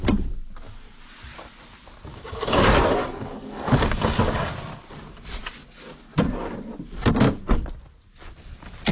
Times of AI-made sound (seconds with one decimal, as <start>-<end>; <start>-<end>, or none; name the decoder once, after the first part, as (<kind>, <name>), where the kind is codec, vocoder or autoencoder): 2.1-2.6 (codec, DAC); 3.0-4.5